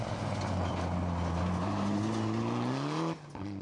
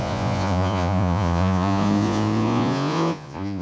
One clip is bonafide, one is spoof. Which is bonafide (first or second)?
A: first